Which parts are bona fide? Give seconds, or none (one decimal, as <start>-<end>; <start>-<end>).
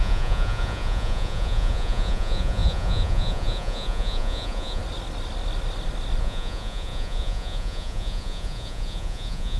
4.8-6.2